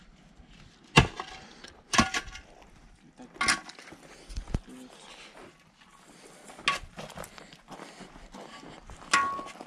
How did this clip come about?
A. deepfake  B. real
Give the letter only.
B